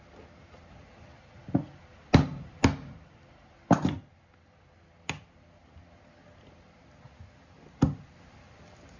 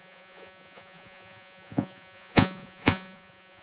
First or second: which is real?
first